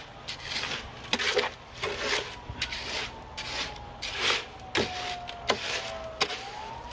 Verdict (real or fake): real